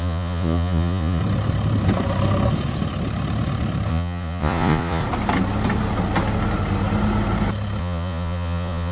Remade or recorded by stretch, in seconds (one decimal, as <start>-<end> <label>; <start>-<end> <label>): 0.0-1.2 remade; 1.2-3.9 recorded; 3.9-5.0 remade; 5.0-7.8 recorded; 7.8-8.9 remade